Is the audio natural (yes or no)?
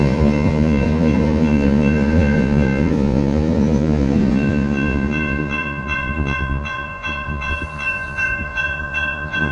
no